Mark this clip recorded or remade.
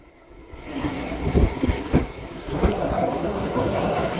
remade